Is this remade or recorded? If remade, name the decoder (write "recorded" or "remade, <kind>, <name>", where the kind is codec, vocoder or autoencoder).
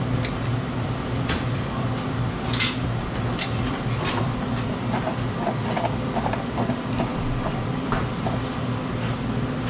remade, vocoder, BigVGAN v2